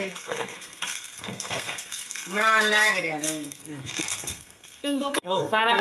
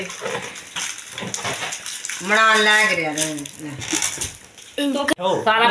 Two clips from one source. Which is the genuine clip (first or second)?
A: second